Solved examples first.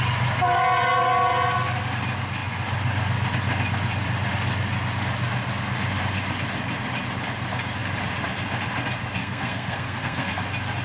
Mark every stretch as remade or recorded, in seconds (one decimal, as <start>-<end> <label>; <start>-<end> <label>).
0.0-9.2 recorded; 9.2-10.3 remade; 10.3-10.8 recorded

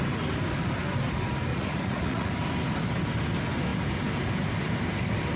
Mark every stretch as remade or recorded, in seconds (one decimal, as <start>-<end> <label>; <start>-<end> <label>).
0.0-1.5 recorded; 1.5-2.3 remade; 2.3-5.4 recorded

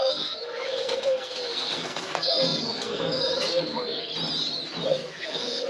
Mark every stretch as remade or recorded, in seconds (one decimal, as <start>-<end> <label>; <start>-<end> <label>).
0.0-4.1 remade; 4.1-4.9 recorded; 4.9-5.7 remade